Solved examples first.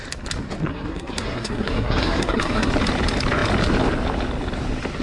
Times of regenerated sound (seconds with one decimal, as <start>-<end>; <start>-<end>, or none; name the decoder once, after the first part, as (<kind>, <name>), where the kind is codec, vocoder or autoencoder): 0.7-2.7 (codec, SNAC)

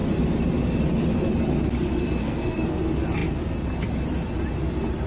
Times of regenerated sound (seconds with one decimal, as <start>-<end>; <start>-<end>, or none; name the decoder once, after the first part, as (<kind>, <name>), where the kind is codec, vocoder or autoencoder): 2.2-2.8 (codec, SNAC)

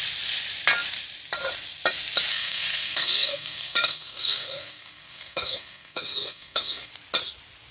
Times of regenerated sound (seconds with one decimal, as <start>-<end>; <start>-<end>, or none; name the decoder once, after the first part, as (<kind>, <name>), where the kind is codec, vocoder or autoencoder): 2.3-6.9 (codec, SNAC)

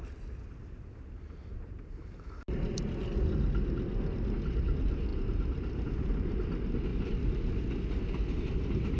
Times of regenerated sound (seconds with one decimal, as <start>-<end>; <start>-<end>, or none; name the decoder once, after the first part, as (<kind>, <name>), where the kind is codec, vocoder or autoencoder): none

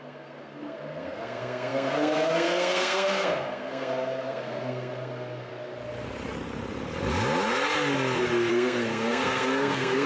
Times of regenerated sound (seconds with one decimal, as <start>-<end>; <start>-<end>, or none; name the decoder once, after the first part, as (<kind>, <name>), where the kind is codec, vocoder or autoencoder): 0.0-5.5 (codec, SNAC); 8.5-10.1

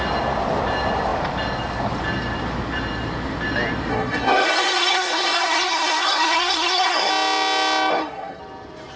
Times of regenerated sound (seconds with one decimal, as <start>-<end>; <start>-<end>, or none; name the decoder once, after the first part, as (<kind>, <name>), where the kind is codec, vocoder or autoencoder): 3.9-7.1 (codec, SNAC); 7.9-8.4